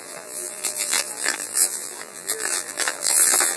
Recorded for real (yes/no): no